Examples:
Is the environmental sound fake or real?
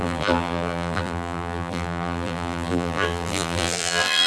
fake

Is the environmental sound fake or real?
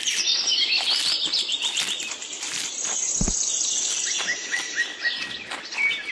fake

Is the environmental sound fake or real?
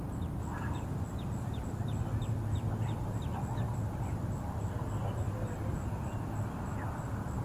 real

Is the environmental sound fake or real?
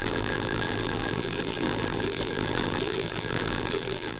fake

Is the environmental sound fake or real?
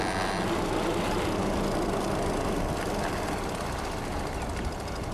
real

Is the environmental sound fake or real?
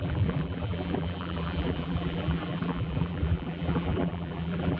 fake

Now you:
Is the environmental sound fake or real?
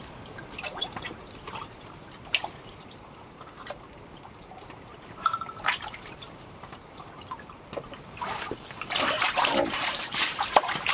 fake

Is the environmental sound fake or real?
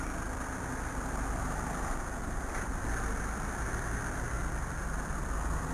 fake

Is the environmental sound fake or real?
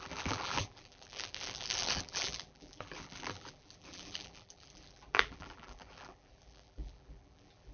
fake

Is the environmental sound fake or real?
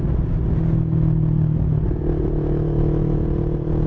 real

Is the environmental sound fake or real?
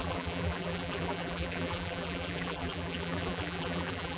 fake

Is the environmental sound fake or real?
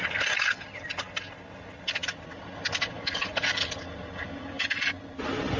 fake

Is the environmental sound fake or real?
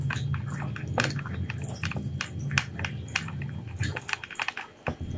real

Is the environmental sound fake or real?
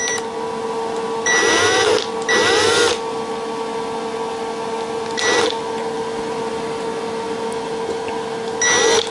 real